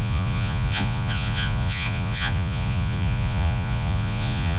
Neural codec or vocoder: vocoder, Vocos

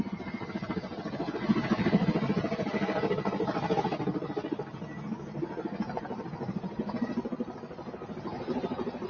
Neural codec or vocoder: none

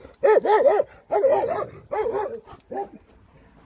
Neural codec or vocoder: none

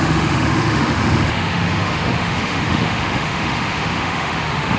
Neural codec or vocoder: autoencoder, DAC-VAE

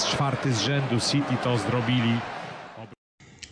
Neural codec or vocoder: none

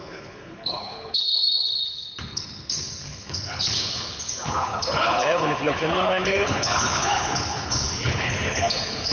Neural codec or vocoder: codec, HILCodec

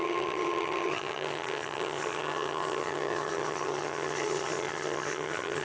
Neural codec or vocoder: vocoder, HiFi-GAN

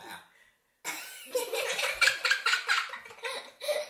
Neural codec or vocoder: none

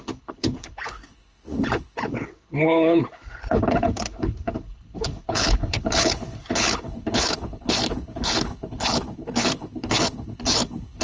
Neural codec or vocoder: codec, HILCodec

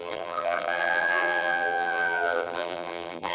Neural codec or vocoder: vocoder, BigVGAN v2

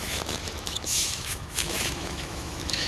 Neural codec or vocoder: autoencoder, DAC-VAE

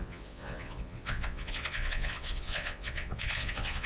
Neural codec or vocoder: vocoder, Vocos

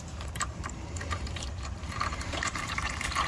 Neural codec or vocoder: vocoder, BigVGAN v2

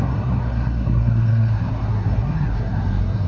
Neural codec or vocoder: codec, SNAC